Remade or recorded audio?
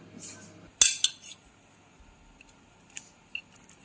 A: recorded